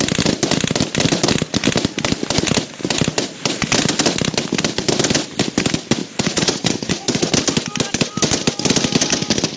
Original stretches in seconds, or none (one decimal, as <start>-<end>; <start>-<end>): 0.0-6.0; 7.3-9.6